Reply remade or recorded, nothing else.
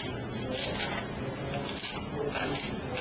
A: recorded